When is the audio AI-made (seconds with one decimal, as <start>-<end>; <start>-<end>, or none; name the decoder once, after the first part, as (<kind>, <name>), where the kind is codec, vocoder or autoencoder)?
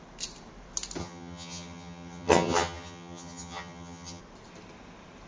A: 1.0-4.2 (vocoder, HiFi-GAN)